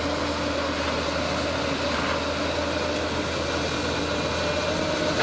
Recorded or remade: recorded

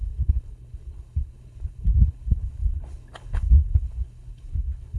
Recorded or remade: remade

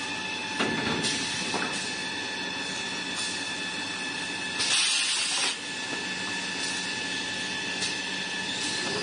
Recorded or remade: recorded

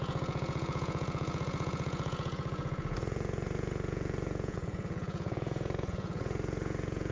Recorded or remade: remade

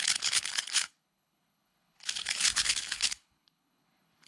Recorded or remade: remade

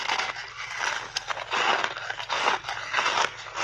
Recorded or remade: recorded